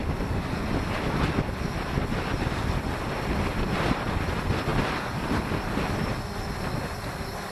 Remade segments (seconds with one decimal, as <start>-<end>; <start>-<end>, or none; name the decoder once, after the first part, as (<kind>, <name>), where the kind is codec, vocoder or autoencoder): 4.7-5.9 (vocoder, BigVGAN v2)